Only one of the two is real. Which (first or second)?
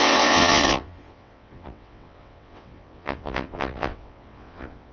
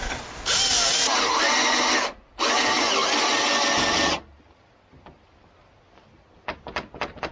second